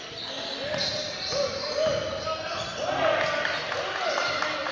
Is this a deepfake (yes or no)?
no